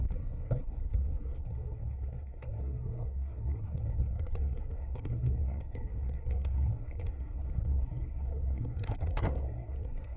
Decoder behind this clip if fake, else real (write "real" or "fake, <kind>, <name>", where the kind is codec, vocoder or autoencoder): fake, codec, SNAC